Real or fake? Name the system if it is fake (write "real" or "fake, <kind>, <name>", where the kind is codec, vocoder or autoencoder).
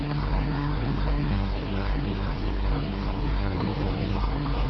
fake, codec, SNAC